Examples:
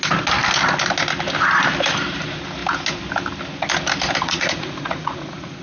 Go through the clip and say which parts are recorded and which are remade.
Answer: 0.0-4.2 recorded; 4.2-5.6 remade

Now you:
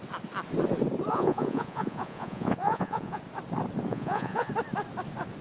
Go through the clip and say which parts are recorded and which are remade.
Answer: 0.0-1.1 recorded; 1.1-3.2 remade; 3.2-3.9 recorded; 3.9-4.5 remade; 4.5-5.4 recorded

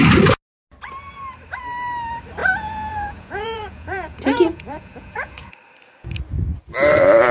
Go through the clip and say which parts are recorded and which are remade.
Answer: 0.0-2.4 recorded; 2.4-5.5 remade; 5.5-7.3 recorded

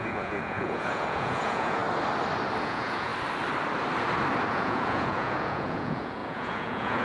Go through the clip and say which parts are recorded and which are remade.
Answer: 0.0-1.8 remade; 1.8-2.6 recorded; 2.6-3.1 remade; 3.1-4.5 recorded; 4.5-7.0 remade